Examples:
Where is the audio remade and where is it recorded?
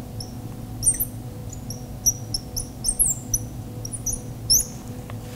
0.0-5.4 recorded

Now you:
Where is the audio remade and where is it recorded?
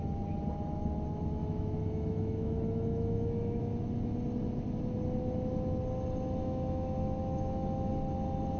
0.0-1.4 recorded; 1.4-3.6 remade; 3.6-6.4 recorded; 6.4-7.9 remade; 7.9-8.6 recorded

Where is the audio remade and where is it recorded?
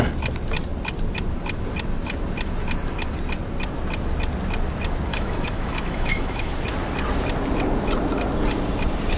0.0-5.1 recorded; 5.1-6.5 remade; 6.5-9.2 recorded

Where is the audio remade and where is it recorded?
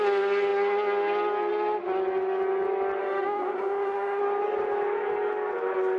0.0-3.0 recorded; 3.0-4.2 remade; 4.2-6.0 recorded